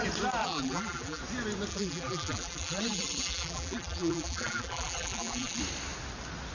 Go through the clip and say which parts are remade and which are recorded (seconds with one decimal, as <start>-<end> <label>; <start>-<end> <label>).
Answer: 0.0-0.4 recorded; 0.4-1.2 remade; 1.2-1.7 recorded; 1.7-5.6 remade; 5.6-6.5 recorded